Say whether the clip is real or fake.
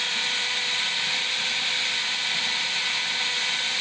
real